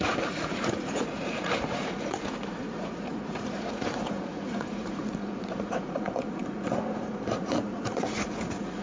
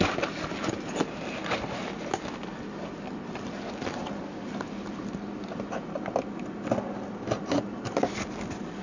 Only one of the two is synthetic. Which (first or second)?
first